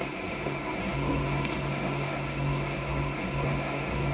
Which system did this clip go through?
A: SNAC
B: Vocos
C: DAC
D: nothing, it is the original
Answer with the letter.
A